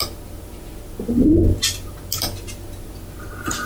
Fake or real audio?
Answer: real